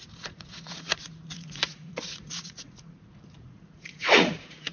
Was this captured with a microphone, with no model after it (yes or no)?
no